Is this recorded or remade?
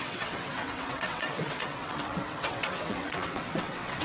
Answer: remade